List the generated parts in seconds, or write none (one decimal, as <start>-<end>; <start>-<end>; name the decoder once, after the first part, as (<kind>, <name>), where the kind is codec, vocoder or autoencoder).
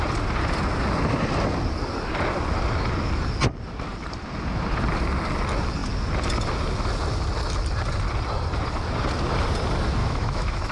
10.0-10.7 (autoencoder, DAC-VAE)